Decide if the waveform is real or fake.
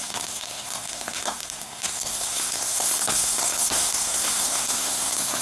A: fake